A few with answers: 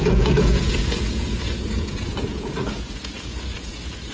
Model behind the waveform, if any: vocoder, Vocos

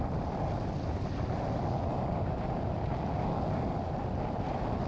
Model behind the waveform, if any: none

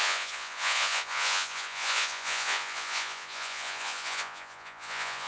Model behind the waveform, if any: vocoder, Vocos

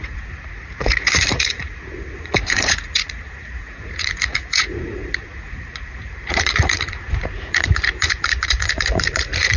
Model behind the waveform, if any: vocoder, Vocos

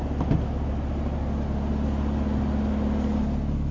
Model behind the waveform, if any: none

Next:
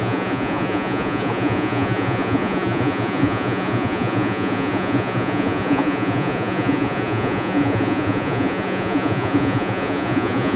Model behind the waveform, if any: vocoder, Vocos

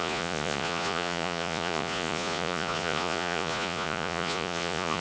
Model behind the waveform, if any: vocoder, Vocos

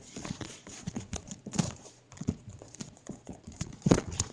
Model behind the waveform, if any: vocoder, Vocos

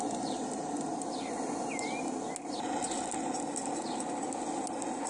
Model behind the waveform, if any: none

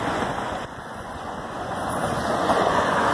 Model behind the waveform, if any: vocoder, Vocos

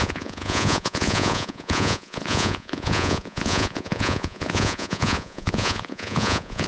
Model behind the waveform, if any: vocoder, Vocos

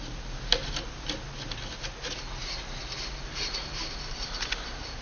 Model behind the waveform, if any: none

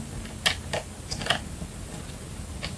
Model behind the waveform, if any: none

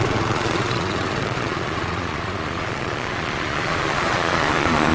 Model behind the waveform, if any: vocoder, Vocos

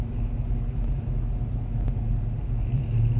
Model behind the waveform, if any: none